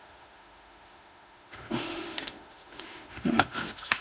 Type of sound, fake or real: fake